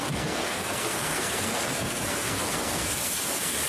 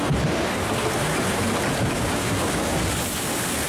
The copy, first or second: first